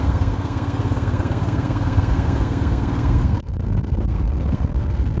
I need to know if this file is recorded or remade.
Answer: remade